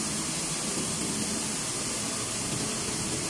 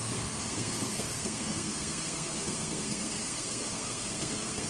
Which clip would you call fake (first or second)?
second